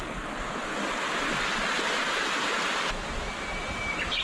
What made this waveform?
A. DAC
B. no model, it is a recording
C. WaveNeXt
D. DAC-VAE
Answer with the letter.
B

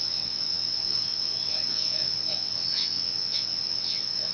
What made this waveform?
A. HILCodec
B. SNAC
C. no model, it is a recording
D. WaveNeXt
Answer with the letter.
D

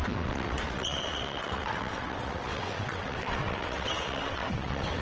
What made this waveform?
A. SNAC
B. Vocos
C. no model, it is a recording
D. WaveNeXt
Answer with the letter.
D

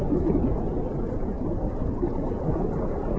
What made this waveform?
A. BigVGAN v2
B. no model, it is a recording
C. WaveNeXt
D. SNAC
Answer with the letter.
B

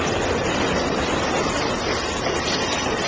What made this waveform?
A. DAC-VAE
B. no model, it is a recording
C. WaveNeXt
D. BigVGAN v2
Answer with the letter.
B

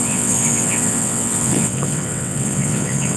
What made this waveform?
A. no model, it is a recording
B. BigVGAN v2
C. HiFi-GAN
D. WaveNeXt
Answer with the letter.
D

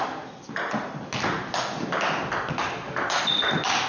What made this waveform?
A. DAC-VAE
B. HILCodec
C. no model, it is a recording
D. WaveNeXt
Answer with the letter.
C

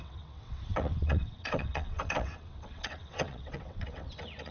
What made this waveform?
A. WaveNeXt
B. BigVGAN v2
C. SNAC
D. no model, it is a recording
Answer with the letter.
A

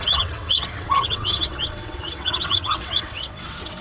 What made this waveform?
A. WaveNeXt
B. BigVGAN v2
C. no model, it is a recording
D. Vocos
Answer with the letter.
A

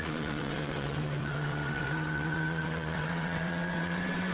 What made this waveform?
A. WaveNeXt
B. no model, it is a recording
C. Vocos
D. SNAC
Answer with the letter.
A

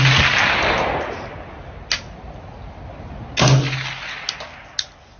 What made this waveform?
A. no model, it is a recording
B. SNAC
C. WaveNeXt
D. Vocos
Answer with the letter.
A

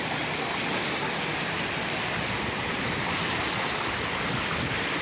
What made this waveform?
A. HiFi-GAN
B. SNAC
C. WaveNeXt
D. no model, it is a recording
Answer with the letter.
D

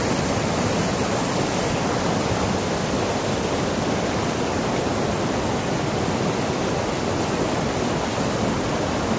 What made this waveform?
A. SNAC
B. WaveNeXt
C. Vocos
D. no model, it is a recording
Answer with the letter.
D